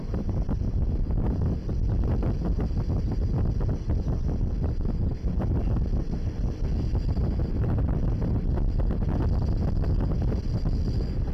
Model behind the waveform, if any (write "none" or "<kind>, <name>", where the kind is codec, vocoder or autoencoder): none